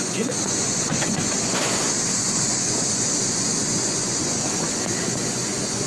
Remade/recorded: remade